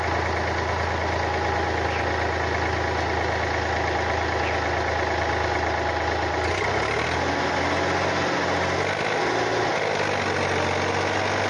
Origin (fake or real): real